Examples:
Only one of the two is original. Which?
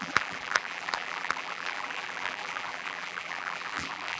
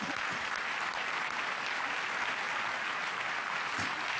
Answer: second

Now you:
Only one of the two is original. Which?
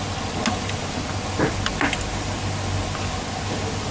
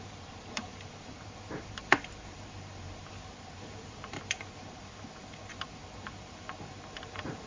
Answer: first